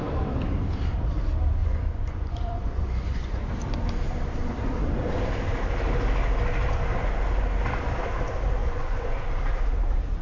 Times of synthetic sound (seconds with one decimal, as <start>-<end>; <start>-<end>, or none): 1.6-3.5; 8.6-9.3